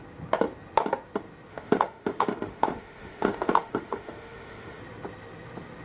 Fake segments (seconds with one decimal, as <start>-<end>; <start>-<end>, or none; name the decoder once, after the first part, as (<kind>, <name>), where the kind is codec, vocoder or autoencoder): 1.5-4.8 (autoencoder, DAC-VAE)